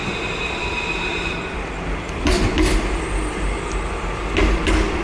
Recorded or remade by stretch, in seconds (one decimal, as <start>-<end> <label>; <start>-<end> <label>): 0.0-5.0 recorded

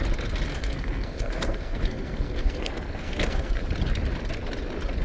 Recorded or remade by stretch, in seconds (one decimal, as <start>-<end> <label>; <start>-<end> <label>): 0.0-0.5 recorded; 0.5-3.5 remade; 3.5-5.0 recorded

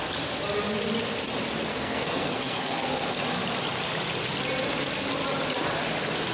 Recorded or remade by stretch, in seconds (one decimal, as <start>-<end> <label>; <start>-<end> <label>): 0.0-1.7 recorded; 1.7-3.2 remade; 3.2-6.3 recorded

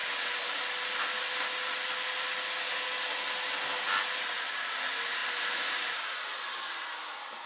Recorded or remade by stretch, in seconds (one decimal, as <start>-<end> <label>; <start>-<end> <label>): 0.0-7.5 recorded

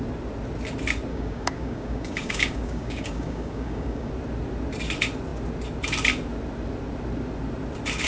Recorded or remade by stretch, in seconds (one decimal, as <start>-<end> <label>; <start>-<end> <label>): 0.0-1.1 recorded; 1.1-4.1 remade; 4.1-8.1 recorded

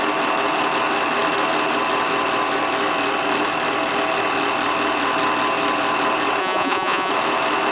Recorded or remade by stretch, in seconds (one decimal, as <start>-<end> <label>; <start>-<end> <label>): 0.0-6.4 recorded; 6.4-7.1 remade; 7.1-7.7 recorded

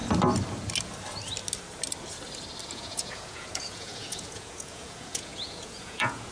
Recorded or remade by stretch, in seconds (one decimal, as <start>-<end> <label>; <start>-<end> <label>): 0.0-2.7 recorded; 2.7-6.3 remade